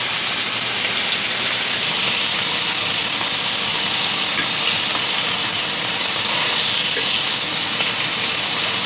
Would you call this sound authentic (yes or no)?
yes